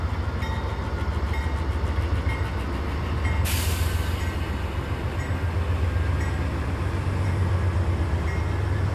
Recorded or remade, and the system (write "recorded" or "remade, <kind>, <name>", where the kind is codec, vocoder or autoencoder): recorded